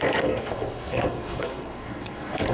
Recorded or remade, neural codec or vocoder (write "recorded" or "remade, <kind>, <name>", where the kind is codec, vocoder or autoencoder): remade, codec, SNAC